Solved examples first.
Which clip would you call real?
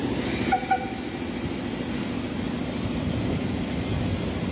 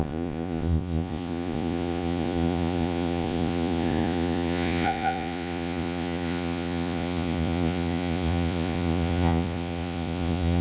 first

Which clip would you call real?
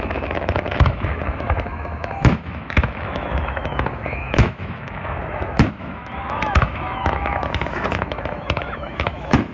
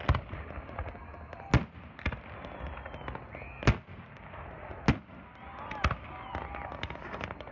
second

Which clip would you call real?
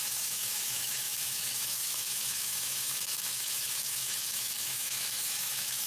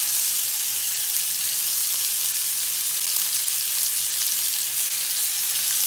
second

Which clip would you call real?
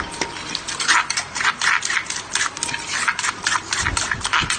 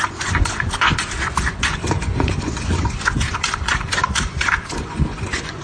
first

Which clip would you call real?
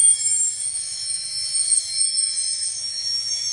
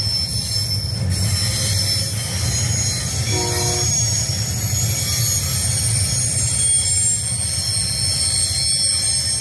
second